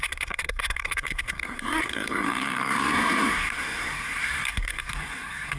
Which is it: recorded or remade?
remade